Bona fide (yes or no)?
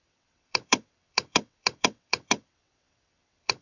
no